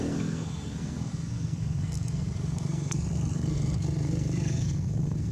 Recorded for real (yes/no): no